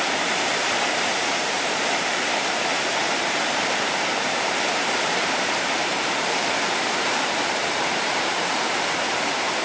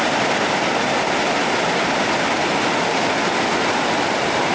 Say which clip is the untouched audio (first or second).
second